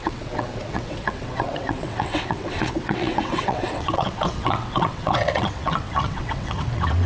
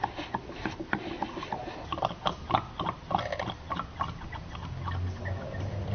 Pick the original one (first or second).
second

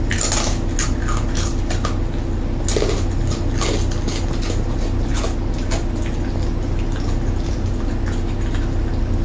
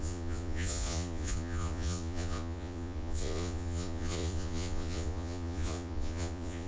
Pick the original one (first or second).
first